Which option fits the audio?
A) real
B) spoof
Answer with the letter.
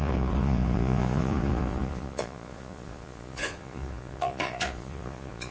B